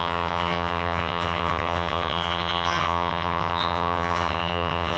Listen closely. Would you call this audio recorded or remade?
remade